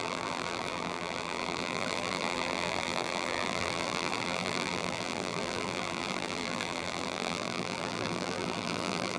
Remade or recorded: remade